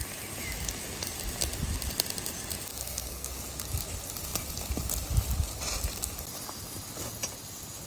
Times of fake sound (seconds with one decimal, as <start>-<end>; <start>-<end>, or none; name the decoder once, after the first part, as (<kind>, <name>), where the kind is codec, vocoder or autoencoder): 2.7-3.3 (codec, SNAC)